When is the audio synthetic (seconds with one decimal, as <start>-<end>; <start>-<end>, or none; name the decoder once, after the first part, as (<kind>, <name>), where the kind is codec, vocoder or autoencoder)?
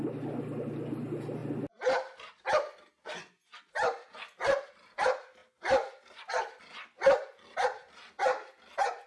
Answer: none